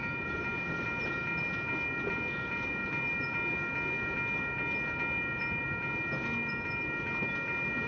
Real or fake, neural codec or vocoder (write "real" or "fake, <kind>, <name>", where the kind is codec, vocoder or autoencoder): real